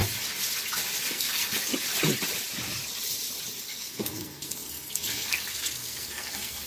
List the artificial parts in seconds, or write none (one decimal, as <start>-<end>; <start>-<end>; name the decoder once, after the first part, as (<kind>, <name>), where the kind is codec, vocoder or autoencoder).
1.1-1.7 (codec, SNAC); 3.6-6.7